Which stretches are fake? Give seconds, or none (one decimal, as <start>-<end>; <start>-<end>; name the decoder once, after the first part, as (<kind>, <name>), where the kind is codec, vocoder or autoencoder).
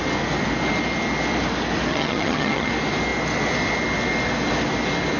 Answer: 1.9-2.7 (vocoder, HiFi-GAN)